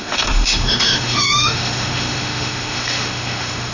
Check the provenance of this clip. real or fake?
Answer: fake